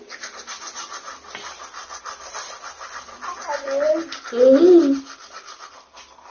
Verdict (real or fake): real